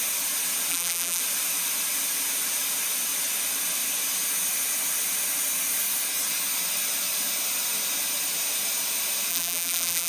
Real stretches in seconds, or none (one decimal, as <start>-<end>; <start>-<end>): 0.0-0.7; 1.2-9.3

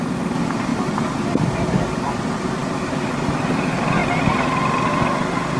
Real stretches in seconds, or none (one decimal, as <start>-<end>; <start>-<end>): 0.0-5.6